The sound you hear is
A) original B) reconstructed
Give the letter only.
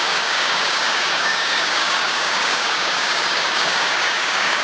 B